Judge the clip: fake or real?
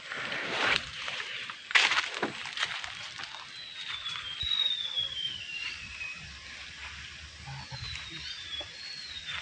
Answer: real